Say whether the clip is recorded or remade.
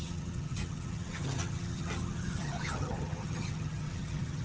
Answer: remade